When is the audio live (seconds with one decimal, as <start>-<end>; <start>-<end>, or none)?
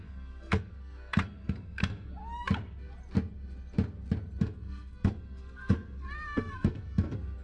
2.2-4.4